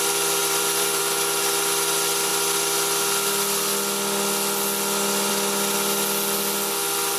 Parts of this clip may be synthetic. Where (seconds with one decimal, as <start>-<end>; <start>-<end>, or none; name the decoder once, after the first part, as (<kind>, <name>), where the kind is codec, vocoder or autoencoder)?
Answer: 0.4-1.0 (vocoder, BigVGAN v2)